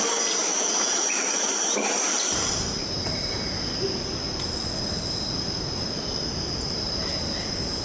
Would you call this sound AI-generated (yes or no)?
no